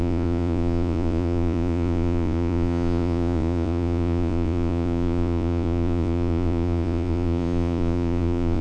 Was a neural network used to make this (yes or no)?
yes